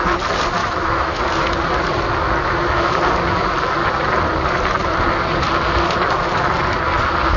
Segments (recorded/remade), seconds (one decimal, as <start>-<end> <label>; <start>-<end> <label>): 0.0-0.6 recorded; 0.6-1.2 remade; 1.2-7.4 recorded